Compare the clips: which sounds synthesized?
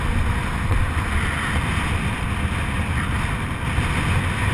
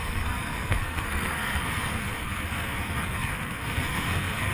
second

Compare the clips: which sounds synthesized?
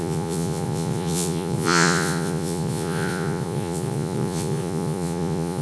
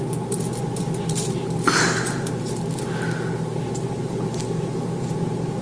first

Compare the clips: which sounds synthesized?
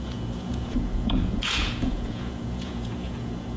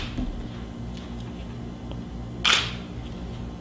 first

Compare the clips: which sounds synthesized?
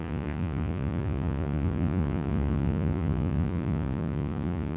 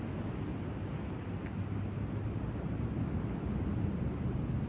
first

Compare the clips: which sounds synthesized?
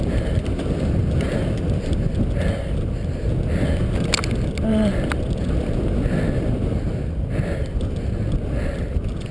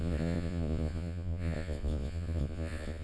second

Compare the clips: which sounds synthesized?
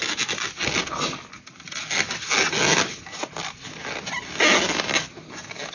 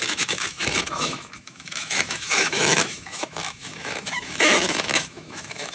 second